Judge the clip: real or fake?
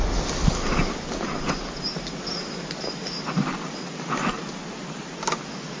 real